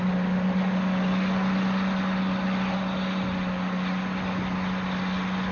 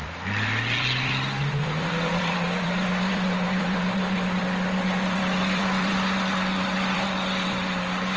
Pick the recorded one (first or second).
first